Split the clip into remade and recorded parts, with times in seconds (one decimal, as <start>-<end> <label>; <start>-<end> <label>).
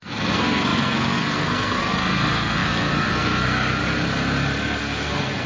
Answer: 0.0-3.8 remade; 3.8-4.8 recorded; 4.8-5.5 remade